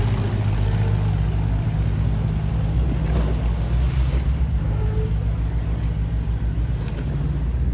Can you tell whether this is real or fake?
real